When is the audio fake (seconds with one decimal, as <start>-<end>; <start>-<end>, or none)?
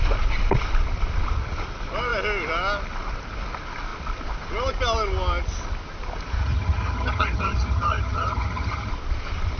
6.4-8.9